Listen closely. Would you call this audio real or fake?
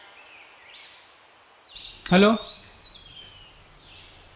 real